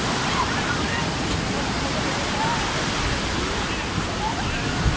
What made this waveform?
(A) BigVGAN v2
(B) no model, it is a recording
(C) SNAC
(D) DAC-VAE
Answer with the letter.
B